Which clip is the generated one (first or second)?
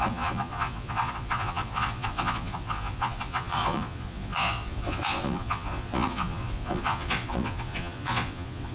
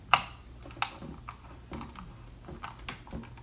first